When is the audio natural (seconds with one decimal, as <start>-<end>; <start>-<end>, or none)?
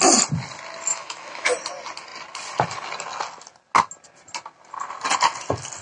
0.0-0.9; 1.5-5.8